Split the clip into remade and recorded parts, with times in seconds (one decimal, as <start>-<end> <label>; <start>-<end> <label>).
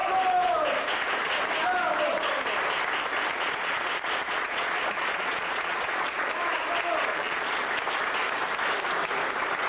0.0-3.3 recorded; 3.3-6.3 remade; 6.3-7.1 recorded; 7.1-7.7 remade; 7.7-9.7 recorded